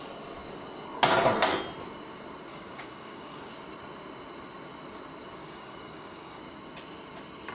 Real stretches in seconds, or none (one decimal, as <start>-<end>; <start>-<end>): 0.0-2.5; 3.5-5.4; 6.4-7.5